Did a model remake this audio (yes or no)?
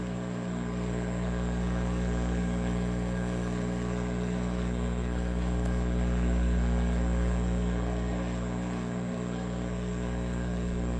yes